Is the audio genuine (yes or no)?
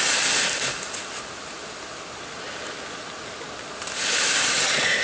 yes